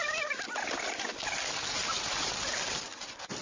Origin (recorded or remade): recorded